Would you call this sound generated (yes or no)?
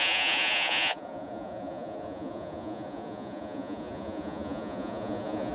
yes